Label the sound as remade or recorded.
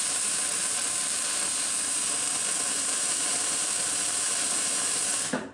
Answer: remade